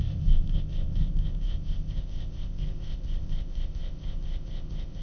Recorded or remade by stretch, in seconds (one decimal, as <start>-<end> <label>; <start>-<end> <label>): 0.0-5.0 remade